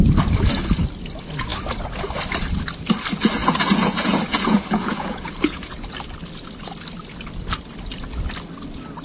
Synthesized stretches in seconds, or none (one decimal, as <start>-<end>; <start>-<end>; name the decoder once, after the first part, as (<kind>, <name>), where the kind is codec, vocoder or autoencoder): 3.4-5.9 (vocoder, Vocos)